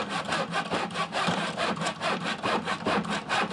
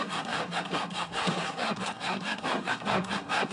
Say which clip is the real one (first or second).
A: first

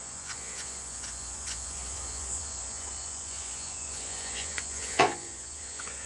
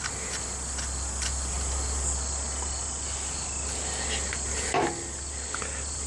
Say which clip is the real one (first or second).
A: second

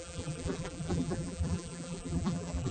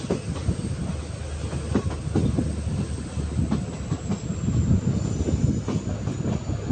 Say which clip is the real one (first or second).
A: second